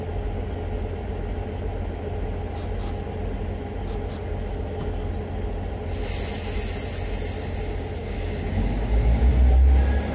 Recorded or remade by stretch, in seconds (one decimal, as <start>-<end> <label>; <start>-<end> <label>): 0.0-8.0 recorded; 8.0-9.3 remade; 9.3-10.1 recorded

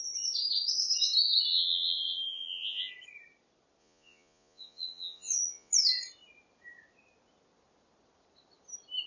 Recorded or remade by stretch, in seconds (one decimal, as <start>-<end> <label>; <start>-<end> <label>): 0.0-1.5 recorded; 1.5-2.9 remade; 2.9-3.8 recorded; 3.8-5.7 remade; 5.7-9.1 recorded

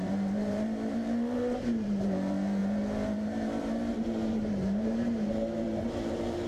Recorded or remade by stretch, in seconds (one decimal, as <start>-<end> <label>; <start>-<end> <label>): 0.0-6.5 remade

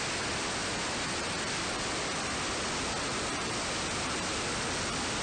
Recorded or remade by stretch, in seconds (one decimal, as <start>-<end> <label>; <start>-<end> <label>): 0.0-5.2 recorded

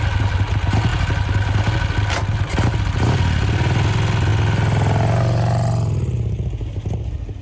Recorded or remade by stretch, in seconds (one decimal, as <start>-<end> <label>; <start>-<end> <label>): 0.0-7.4 recorded